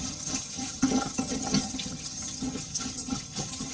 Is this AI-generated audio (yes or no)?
yes